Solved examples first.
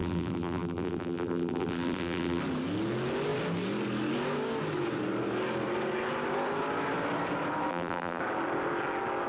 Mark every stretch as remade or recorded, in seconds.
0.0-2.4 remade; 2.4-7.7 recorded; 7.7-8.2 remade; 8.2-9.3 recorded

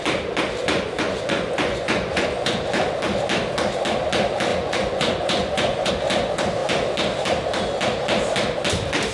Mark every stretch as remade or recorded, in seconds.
0.0-0.6 recorded; 0.6-2.6 remade; 2.6-4.5 recorded; 4.5-5.9 remade; 5.9-9.1 recorded

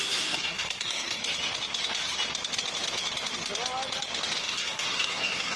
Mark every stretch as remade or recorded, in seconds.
0.0-1.2 remade; 1.2-4.4 recorded; 4.4-5.6 remade

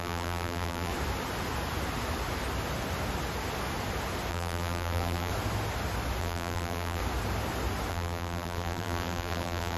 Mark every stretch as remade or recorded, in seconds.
0.0-0.9 remade; 0.9-4.3 recorded; 4.3-5.3 remade; 5.3-6.2 recorded; 6.2-7.0 remade; 7.0-7.9 recorded; 7.9-9.8 remade